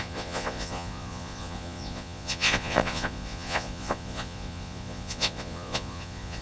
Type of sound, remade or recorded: remade